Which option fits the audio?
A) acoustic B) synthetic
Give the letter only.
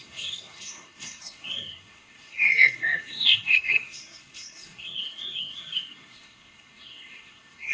B